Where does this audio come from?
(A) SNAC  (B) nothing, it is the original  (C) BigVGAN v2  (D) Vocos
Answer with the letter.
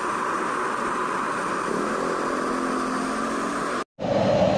B